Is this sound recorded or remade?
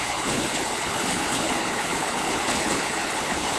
remade